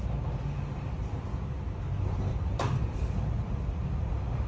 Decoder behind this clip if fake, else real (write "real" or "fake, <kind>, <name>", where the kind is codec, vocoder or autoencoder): real